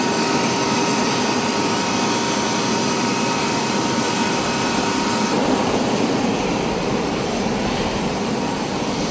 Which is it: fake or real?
fake